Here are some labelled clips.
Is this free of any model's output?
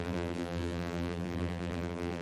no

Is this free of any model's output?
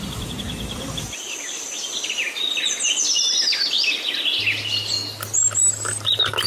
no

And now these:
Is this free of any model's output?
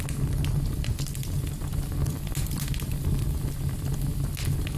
yes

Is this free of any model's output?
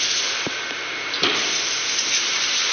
yes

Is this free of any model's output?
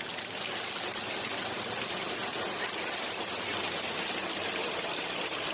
yes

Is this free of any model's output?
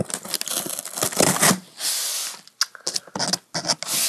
yes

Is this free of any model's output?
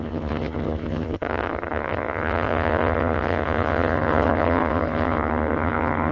no